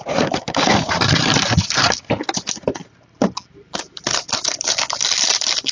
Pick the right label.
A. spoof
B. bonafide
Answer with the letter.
B